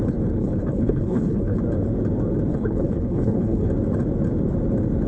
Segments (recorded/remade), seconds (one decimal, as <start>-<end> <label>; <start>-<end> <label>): 0.0-0.4 recorded; 0.4-1.6 remade; 1.6-2.5 recorded; 2.5-3.7 remade; 3.7-5.1 recorded